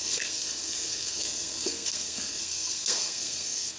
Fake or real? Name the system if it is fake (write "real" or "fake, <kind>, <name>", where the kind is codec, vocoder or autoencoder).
fake, codec, SNAC